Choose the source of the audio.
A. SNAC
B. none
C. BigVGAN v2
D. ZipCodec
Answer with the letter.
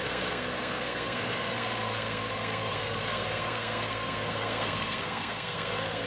A